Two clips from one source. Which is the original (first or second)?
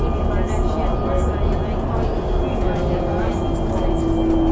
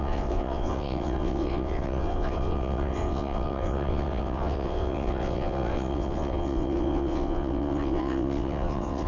first